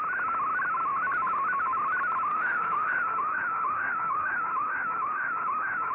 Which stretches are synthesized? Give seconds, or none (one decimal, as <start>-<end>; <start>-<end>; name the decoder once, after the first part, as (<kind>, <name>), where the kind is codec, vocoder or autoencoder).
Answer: 2.3-5.9 (autoencoder, DAC-VAE)